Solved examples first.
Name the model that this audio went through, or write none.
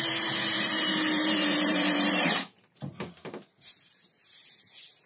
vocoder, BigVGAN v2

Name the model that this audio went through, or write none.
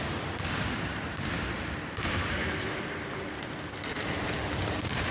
vocoder, BigVGAN v2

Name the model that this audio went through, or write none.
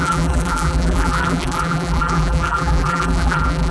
vocoder, BigVGAN v2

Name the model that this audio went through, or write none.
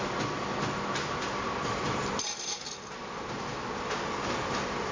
none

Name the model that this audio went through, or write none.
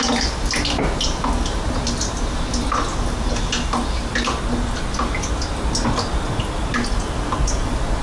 none